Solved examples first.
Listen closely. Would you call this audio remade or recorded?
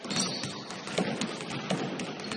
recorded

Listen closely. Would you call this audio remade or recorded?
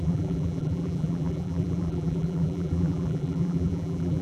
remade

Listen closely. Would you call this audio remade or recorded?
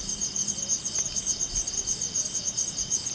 recorded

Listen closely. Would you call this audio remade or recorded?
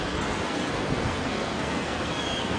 remade